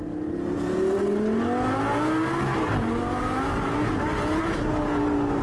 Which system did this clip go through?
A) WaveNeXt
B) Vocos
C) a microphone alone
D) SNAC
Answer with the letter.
C